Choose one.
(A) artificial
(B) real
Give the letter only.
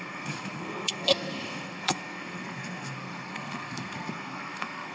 A